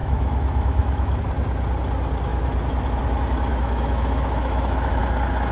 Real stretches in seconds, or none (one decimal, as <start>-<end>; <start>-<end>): 1.2-3.5; 5.0-5.5

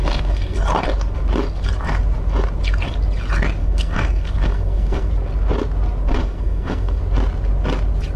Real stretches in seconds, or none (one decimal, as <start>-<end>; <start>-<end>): 0.6-3.6; 5.1-6.2; 7.0-8.2

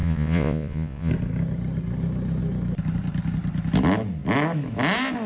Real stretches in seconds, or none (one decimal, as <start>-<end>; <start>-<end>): 1.1-5.3

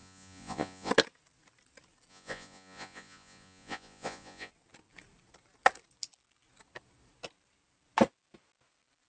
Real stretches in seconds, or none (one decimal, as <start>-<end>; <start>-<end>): 0.9-2.1; 4.5-9.1

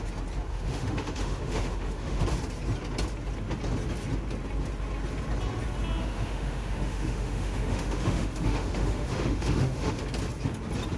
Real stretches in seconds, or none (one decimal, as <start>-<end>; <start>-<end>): 0.0-0.5; 2.2-6.0; 10.0-11.0